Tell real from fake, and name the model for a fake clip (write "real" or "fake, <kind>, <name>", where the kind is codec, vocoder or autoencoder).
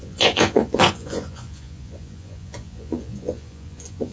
fake, vocoder, Vocos